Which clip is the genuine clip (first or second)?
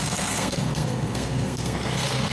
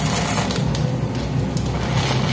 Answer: second